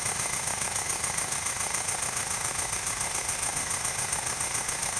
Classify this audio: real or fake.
fake